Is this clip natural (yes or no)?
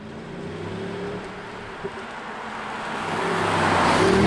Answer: yes